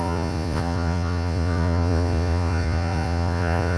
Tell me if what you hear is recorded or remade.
remade